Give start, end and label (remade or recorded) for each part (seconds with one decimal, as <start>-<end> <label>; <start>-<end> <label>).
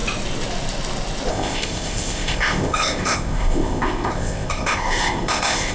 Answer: 0.0-1.3 recorded; 1.3-5.7 remade